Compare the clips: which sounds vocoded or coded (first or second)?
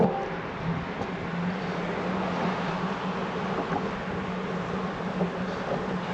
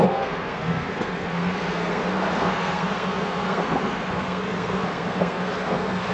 second